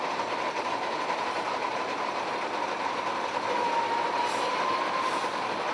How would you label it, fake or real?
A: fake